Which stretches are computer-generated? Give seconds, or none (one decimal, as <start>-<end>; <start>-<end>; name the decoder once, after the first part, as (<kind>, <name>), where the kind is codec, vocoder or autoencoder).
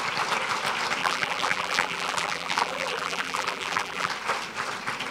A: 1.0-4.1 (vocoder, BigVGAN v2)